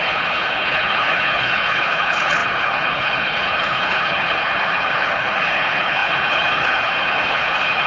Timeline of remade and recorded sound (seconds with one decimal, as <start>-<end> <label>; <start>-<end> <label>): 0.0-7.9 remade

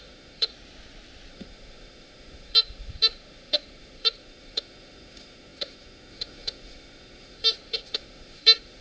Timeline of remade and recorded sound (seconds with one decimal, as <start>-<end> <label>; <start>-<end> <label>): 0.0-0.5 remade; 0.5-1.3 recorded; 1.3-8.8 remade